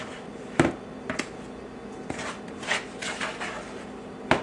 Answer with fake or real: real